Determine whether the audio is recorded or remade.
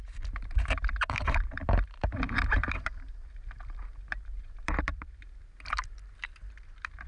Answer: remade